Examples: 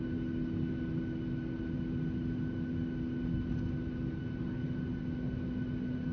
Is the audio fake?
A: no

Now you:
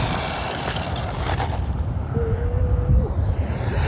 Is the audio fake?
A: yes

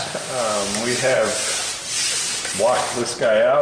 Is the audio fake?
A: no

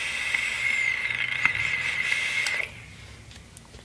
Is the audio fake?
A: no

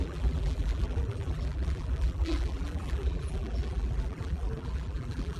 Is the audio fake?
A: yes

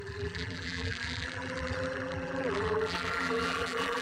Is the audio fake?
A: yes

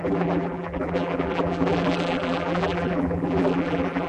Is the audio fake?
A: yes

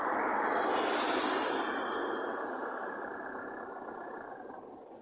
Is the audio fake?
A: no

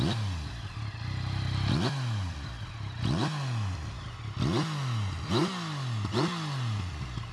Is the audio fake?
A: no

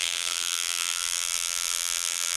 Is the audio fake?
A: yes